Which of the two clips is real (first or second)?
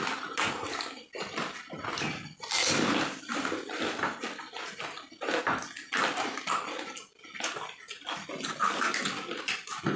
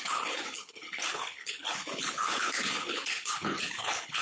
first